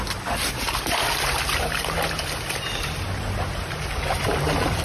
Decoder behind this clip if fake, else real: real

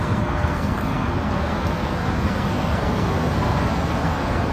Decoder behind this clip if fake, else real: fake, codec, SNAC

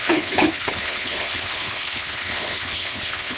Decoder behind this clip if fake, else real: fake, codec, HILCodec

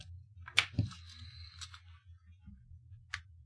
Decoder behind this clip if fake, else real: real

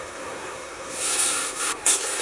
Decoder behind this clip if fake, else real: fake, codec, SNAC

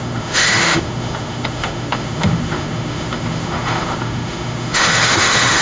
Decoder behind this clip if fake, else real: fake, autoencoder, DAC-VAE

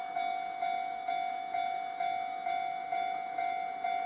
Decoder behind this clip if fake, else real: fake, autoencoder, DAC-VAE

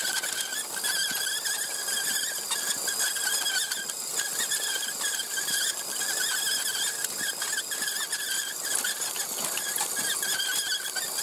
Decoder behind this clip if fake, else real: real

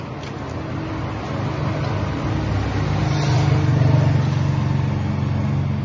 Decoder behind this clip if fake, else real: real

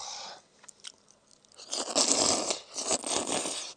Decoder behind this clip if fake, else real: real